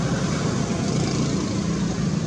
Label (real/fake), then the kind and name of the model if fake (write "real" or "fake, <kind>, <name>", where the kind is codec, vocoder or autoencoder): real